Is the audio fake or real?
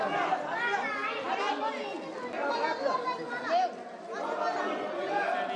real